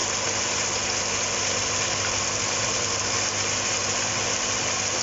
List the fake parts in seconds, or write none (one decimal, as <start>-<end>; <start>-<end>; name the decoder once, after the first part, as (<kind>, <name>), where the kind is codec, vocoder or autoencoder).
none